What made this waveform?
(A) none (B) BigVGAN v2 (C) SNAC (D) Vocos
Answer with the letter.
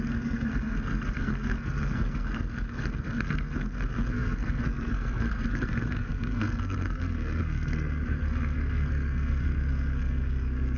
C